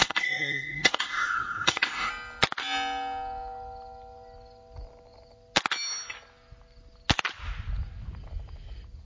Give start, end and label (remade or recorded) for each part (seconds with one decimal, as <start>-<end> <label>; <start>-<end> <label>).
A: 0.0-2.1 remade; 2.1-9.0 recorded